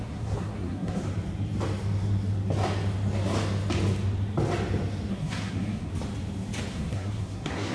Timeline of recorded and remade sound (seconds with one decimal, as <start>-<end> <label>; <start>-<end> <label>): 0.0-1.0 remade; 1.0-5.1 recorded; 5.1-5.9 remade; 5.9-6.7 recorded; 6.7-7.7 remade